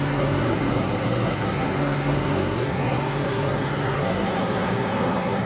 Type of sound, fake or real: fake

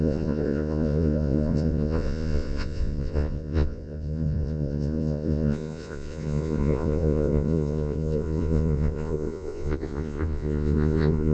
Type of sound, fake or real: fake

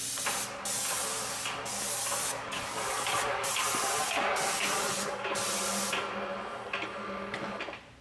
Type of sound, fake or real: real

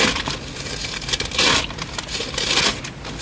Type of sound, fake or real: real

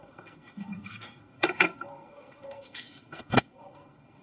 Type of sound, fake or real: fake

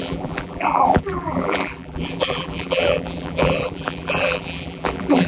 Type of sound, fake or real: fake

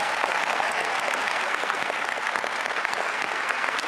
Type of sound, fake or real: fake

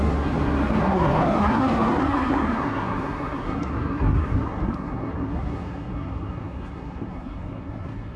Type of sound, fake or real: fake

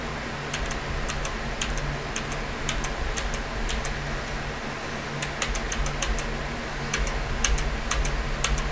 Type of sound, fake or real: real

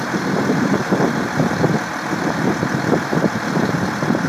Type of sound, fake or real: fake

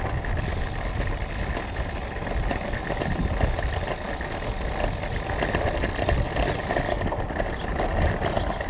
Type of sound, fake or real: real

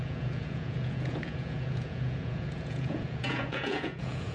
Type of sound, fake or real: fake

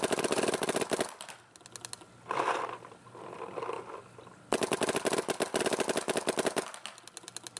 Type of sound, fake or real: real